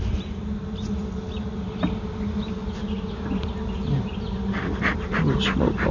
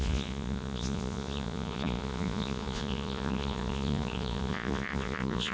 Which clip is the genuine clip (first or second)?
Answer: first